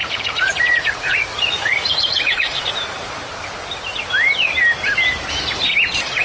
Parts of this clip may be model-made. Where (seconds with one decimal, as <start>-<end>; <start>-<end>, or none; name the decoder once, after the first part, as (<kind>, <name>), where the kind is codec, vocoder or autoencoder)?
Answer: 0.0-2.5 (vocoder, Vocos)